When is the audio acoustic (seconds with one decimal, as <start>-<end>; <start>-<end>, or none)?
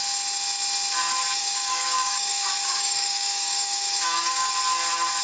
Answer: 0.0-1.4; 4.5-5.2